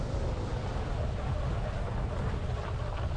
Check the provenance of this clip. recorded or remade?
recorded